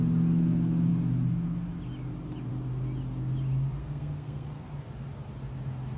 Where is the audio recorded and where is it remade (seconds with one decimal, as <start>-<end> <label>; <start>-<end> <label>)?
0.0-3.8 recorded; 3.8-4.7 remade; 4.7-6.0 recorded